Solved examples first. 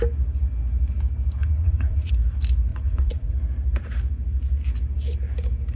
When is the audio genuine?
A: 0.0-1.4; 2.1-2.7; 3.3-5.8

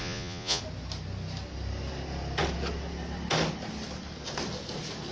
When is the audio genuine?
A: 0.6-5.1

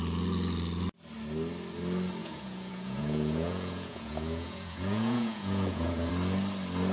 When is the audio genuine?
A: 0.0-2.2; 6.1-6.9

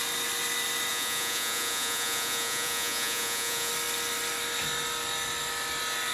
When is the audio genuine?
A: 0.0-0.9; 3.7-6.1